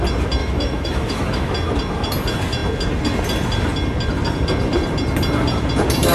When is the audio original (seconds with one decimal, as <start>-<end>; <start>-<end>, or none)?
0.0-0.4; 1.5-6.1